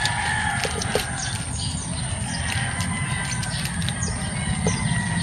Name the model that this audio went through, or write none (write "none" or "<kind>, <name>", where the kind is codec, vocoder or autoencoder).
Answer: none